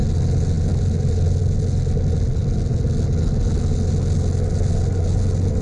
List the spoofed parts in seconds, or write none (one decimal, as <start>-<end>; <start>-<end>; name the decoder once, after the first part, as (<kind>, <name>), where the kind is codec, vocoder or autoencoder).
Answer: none